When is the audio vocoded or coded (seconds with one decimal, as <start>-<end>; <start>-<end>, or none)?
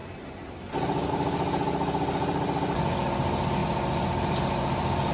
none